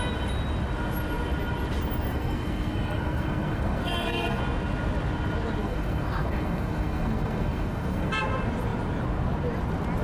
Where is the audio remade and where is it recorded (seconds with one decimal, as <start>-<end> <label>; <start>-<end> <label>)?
0.0-2.1 recorded; 2.1-4.4 remade; 4.4-5.6 recorded; 5.6-8.1 remade; 8.1-10.0 recorded